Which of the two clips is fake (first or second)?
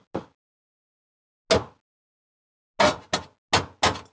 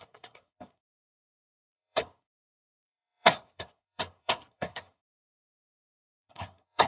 second